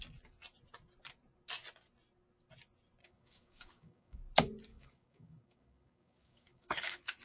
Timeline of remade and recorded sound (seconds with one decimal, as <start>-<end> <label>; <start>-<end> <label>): 0.0-3.0 recorded; 3.0-4.2 remade; 4.2-4.7 recorded; 4.7-7.2 remade